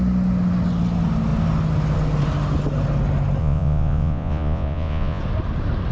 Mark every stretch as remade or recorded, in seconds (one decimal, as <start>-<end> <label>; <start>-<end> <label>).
0.0-3.4 recorded; 3.4-5.2 remade; 5.2-5.9 recorded